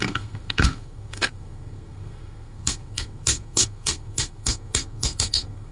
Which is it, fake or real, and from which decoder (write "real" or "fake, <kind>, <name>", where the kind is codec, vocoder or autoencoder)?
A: fake, codec, SNAC